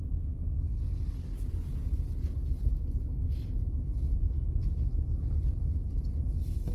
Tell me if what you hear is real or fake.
real